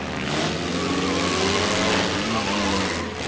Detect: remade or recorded recorded